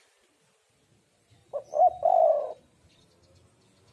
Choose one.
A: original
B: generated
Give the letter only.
A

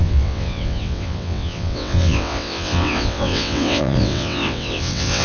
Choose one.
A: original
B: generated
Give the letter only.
B